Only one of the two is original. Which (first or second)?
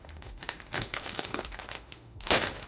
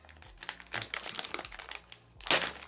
second